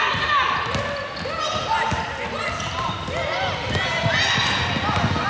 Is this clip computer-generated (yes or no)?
no